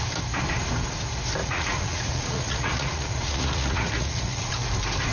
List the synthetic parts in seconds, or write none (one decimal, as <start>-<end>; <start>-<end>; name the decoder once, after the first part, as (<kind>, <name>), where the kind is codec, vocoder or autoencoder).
1.4-4.5 (vocoder, Vocos)

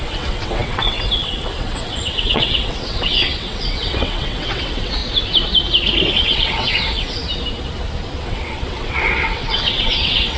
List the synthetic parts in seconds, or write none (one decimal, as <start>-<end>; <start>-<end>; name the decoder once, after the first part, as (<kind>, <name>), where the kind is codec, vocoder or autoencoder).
0.0-5.0 (vocoder, WaveNeXt); 6.1-7.2; 8.2-10.4